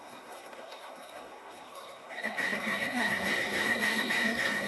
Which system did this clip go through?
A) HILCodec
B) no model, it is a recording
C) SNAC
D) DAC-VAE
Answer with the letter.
C